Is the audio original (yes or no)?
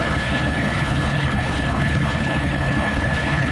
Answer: no